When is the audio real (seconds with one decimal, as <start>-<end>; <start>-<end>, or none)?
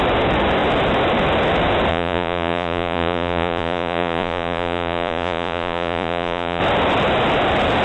0.0-1.9; 6.6-7.8